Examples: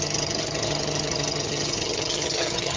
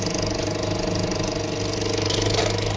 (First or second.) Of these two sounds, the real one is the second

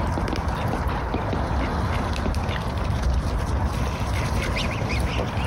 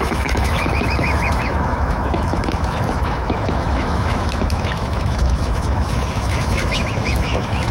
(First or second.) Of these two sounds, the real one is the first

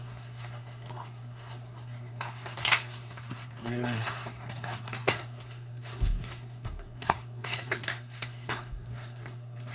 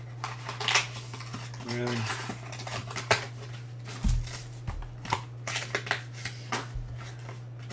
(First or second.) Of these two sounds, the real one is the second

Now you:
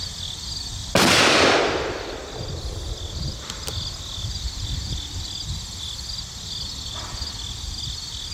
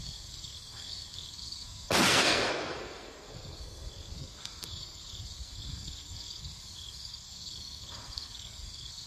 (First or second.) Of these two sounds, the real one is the first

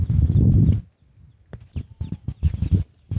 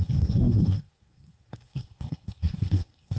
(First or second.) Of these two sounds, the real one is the first